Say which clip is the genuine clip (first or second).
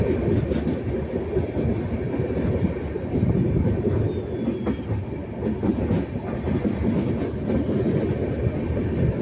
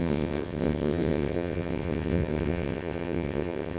first